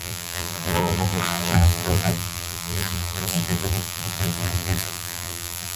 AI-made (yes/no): yes